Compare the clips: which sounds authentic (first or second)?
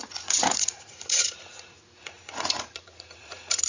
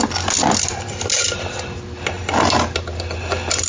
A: second